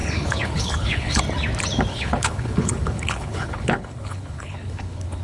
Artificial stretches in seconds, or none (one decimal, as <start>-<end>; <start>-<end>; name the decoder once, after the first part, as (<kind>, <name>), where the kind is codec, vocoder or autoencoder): 0.0-1.2 (codec, HILCodec); 1.9-5.2